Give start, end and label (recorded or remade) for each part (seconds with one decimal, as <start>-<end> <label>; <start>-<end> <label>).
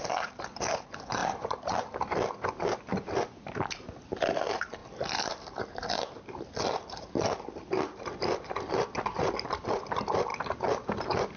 0.0-1.2 recorded; 1.2-1.9 remade; 1.9-11.4 recorded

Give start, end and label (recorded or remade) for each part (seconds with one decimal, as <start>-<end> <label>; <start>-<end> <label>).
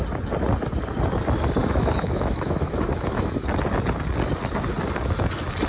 0.0-1.6 recorded; 1.6-3.4 remade; 3.4-5.7 recorded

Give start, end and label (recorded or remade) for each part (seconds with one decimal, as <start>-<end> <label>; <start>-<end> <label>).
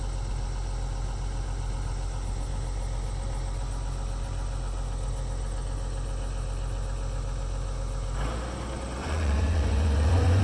0.0-9.0 recorded; 9.0-10.4 remade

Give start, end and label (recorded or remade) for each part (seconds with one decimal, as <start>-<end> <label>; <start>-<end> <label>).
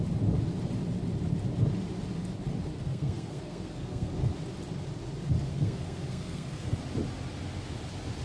0.0-2.7 recorded; 2.7-4.3 remade; 4.3-5.5 recorded; 5.5-6.8 remade; 6.8-8.2 recorded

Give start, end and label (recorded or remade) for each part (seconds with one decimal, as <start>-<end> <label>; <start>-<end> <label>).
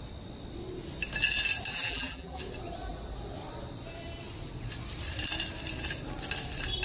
0.0-1.7 recorded; 1.7-2.4 remade; 2.4-6.8 recorded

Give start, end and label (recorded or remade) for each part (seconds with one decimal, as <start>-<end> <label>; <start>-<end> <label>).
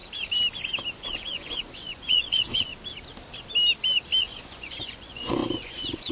0.0-0.9 recorded; 0.9-2.7 remade; 2.7-4.2 recorded; 4.2-6.1 remade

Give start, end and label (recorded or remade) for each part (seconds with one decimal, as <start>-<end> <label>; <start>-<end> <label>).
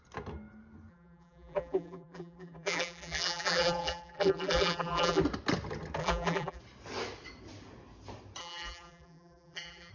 0.0-0.9 recorded; 0.9-5.2 remade; 5.2-6.0 recorded; 6.0-6.6 remade; 6.6-8.4 recorded; 8.4-9.9 remade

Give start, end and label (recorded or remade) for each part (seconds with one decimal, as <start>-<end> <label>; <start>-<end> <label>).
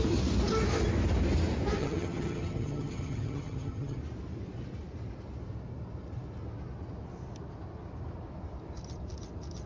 0.0-1.8 recorded; 1.8-4.0 remade; 4.0-9.7 recorded